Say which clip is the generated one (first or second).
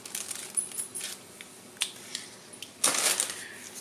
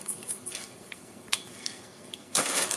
second